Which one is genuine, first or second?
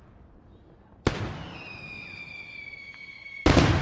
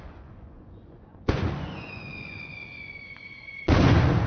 first